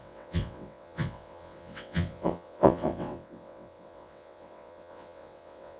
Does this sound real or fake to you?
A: fake